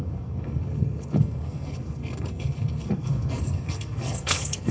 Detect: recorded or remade remade